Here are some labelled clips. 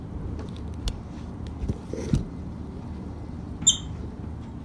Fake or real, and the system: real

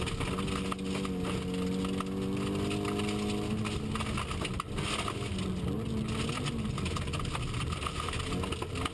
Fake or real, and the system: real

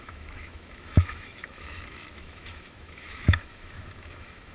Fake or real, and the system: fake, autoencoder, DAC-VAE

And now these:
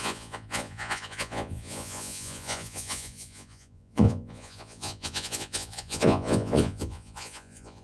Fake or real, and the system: fake, vocoder, Vocos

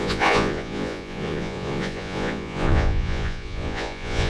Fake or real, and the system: fake, vocoder, Vocos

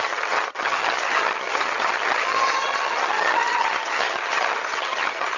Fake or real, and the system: fake, vocoder, HiFi-GAN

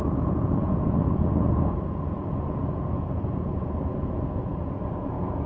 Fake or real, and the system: fake, vocoder, Vocos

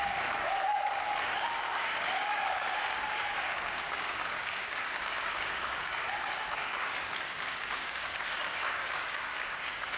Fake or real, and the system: fake, codec, DAC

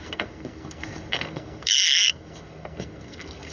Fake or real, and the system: fake, codec, SNAC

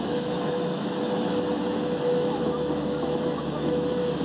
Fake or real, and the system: fake, autoencoder, DAC-VAE